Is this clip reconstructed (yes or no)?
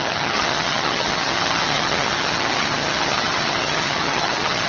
yes